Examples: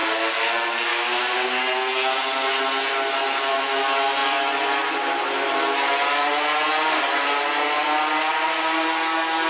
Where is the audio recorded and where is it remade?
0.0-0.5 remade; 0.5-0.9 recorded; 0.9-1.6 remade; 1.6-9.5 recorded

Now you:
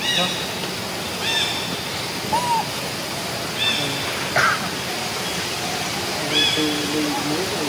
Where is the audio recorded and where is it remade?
0.0-7.7 recorded

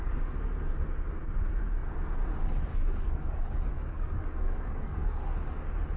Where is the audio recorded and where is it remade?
0.0-2.7 recorded; 2.7-5.2 remade; 5.2-6.0 recorded

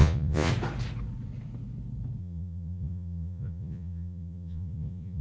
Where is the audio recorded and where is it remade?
0.0-0.5 remade; 0.5-2.2 recorded; 2.2-5.2 remade

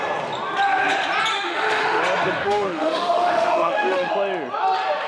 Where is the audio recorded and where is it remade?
0.0-1.3 recorded; 1.3-2.0 remade; 2.0-2.4 recorded; 2.4-4.1 remade; 4.1-5.1 recorded

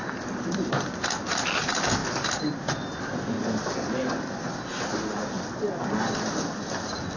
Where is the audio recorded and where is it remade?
0.0-7.2 recorded